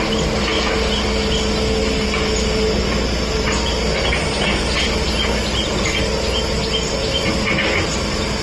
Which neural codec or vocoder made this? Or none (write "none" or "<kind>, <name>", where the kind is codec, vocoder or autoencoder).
none